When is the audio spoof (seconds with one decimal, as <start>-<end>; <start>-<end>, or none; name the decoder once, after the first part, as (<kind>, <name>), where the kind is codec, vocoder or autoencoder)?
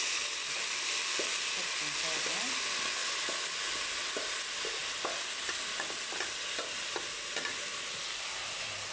none